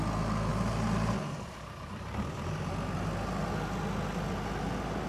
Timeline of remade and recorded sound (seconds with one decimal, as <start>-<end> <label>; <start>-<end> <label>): 0.0-0.5 recorded; 0.5-2.7 remade; 2.7-5.1 recorded